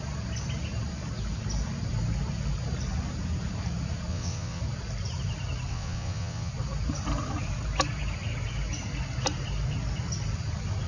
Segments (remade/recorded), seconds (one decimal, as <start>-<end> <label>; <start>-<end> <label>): 0.0-4.1 recorded; 4.1-4.6 remade; 4.6-5.7 recorded; 5.7-6.5 remade; 6.5-10.9 recorded